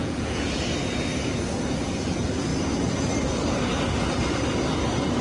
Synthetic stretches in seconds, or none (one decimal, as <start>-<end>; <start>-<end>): 0.0-0.6